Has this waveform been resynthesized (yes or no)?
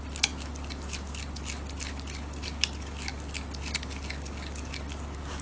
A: no